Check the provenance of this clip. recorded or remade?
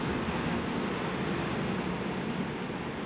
recorded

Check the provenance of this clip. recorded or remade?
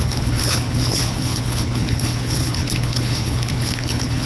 remade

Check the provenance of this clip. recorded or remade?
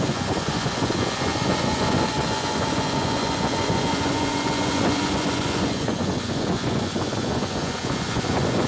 remade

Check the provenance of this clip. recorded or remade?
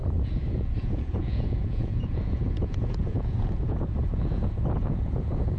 remade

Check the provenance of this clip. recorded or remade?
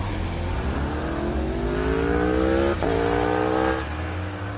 recorded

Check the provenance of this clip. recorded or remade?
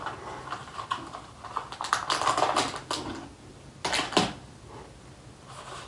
recorded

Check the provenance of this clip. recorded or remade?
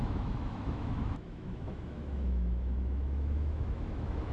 remade